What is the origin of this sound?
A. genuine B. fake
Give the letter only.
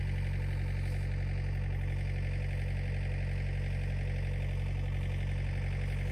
A